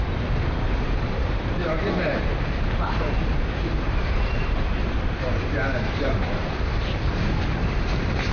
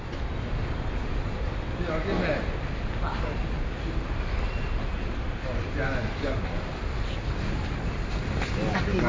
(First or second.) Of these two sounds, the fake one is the first